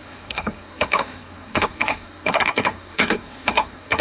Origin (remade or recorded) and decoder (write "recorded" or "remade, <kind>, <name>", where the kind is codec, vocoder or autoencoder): remade, codec, SNAC